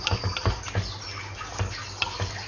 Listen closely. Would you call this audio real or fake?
real